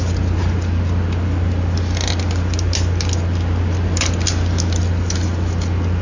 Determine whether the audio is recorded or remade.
recorded